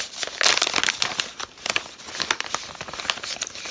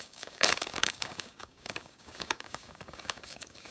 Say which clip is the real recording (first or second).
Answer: first